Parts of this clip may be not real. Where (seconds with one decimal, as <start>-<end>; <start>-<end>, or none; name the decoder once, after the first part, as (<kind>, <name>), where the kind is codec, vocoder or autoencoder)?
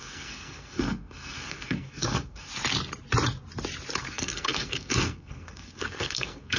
0.0-2.5 (codec, SNAC); 4.0-6.6